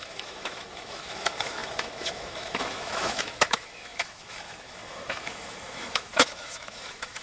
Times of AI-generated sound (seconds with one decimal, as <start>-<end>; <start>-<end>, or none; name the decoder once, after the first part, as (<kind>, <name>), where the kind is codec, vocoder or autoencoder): 0.0-7.2 (autoencoder, DAC-VAE)